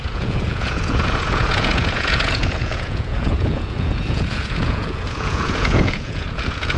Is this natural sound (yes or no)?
no